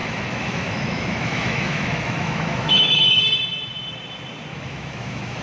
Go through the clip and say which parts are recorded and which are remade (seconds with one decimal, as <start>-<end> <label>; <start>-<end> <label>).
0.0-3.2 remade; 3.2-4.5 recorded; 4.5-5.4 remade